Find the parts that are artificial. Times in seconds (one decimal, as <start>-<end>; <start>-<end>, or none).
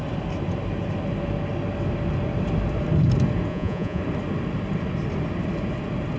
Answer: 3.5-4.0